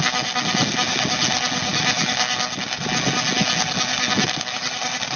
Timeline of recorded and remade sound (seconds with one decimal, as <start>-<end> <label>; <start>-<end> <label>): 0.0-5.2 recorded